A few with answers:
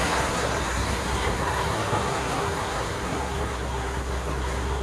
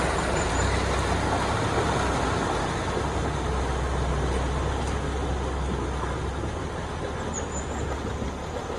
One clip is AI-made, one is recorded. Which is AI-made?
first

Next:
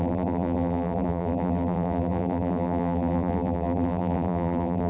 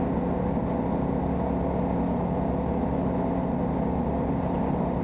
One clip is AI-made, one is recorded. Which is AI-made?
first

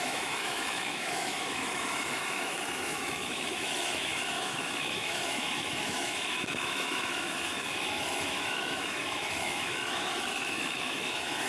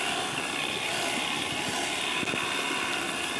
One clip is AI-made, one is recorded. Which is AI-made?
first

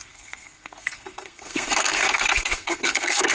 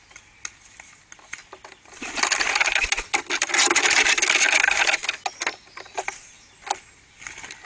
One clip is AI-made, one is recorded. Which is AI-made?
first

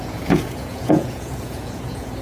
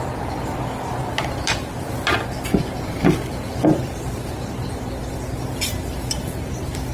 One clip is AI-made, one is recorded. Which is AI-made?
first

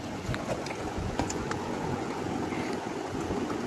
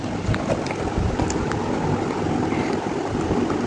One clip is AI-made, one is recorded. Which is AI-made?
first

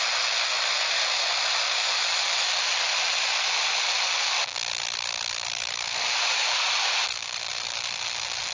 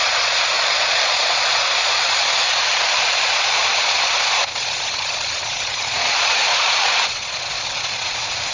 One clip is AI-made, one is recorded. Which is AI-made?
second